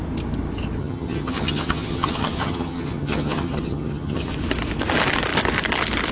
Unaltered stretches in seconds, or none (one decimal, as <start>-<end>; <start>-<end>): 0.0-0.8; 4.3-6.1